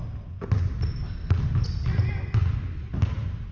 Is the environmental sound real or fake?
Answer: real